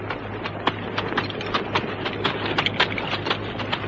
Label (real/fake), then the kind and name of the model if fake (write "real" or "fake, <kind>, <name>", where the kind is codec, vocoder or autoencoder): real